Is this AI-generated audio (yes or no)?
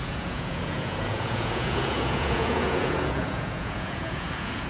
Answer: yes